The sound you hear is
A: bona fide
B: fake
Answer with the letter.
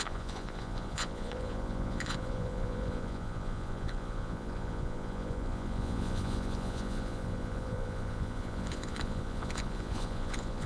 B